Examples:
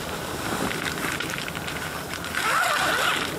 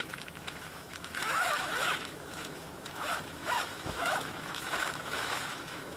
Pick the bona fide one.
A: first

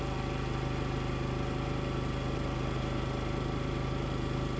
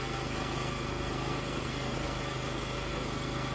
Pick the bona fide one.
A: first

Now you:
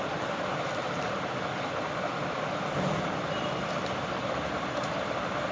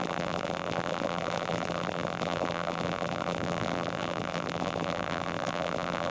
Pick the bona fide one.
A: first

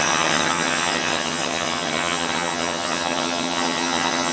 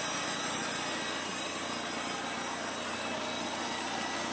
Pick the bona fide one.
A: second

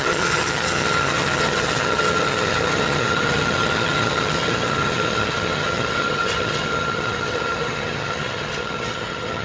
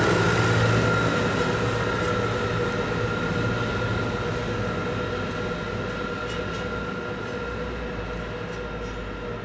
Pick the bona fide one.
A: second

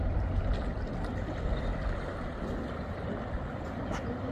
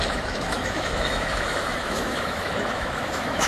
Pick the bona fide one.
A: first